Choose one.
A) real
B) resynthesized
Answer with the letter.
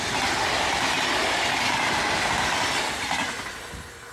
A